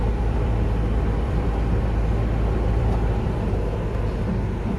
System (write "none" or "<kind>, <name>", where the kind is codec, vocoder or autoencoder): vocoder, BigVGAN v2